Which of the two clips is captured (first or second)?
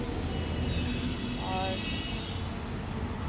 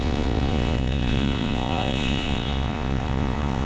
first